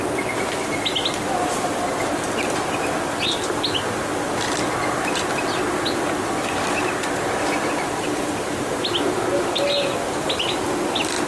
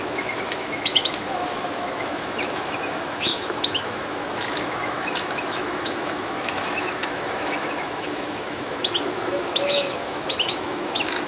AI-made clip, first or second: second